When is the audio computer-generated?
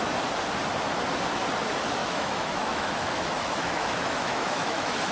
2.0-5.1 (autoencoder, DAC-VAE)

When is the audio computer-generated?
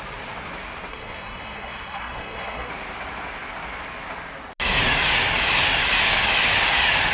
0.9-2.7 (codec, SNAC)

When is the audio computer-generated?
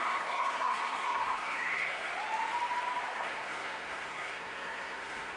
0.0-2.1 (codec, SNAC); 3.1-5.4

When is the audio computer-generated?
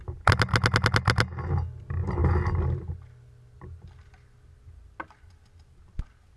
none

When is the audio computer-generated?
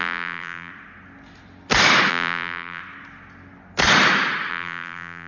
0.0-0.7 (vocoder, BigVGAN v2); 2.1-2.8; 4.5-5.3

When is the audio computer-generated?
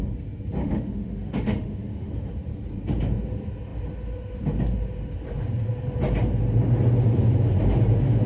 0.6-2.1 (autoencoder, DAC-VAE)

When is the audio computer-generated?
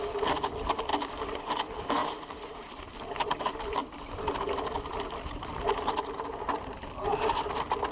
0.9-1.5 (vocoder, BigVGAN v2); 2.0-2.5; 3.8-5.5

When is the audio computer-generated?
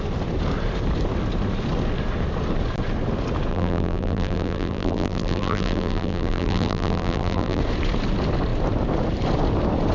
3.5-7.6 (vocoder, BigVGAN v2)